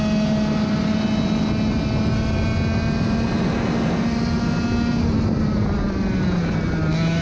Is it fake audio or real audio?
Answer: real